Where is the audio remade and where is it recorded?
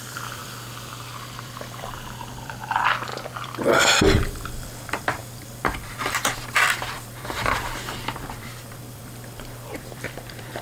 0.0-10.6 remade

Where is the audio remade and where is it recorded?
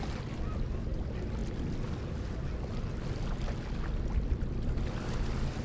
0.0-5.6 recorded